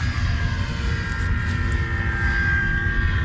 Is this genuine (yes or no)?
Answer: yes